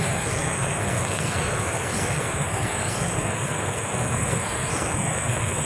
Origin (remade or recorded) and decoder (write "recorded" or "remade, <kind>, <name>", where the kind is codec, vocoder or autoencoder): remade, codec, SNAC